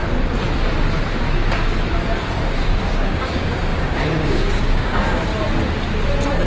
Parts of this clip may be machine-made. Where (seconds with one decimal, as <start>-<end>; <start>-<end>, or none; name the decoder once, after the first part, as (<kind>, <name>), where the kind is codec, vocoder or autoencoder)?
2.8-5.3 (codec, DAC)